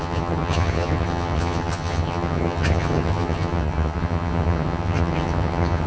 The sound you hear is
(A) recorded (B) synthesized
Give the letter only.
B